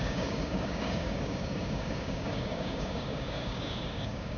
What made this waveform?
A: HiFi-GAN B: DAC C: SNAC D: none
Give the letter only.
B